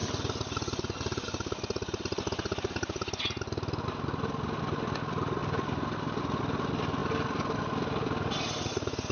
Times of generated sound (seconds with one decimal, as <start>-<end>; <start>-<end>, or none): none